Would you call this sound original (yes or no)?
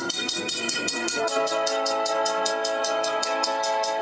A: no